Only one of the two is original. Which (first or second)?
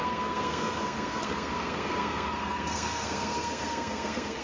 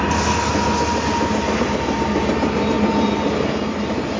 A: second